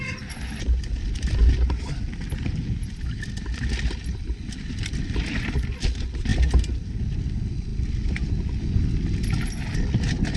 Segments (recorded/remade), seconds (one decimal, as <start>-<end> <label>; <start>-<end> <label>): 0.0-10.4 recorded